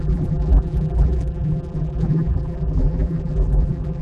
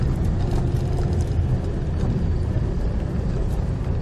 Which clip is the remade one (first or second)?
first